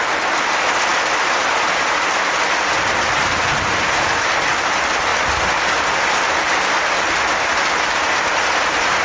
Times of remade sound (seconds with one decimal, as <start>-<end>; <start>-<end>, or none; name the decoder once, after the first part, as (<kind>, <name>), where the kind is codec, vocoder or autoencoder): none